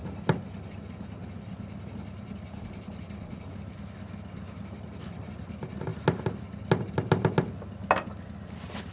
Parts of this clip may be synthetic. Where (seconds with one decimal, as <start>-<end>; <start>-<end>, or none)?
none